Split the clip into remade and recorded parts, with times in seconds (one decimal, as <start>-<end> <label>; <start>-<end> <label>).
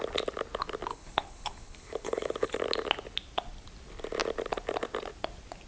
0.0-0.9 recorded; 0.9-2.6 remade; 2.6-5.7 recorded